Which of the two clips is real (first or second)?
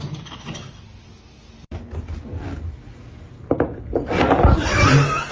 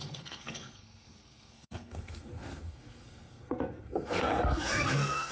first